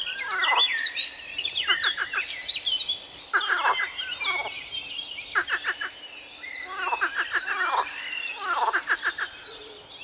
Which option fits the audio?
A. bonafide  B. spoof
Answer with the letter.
A